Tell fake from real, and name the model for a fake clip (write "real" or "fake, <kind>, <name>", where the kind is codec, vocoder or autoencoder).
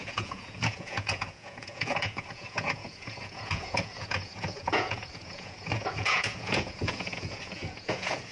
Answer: fake, vocoder, Vocos